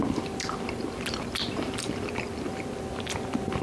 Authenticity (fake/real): real